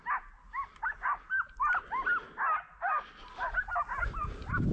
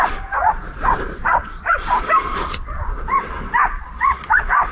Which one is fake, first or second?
second